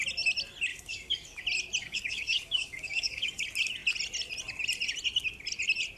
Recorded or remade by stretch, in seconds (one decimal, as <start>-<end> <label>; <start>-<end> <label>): 0.0-0.7 recorded; 0.7-1.4 remade; 1.4-1.8 recorded; 1.8-3.4 remade; 3.4-6.0 recorded